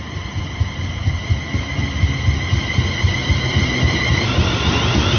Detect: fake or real real